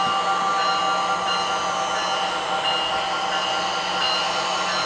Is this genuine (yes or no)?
yes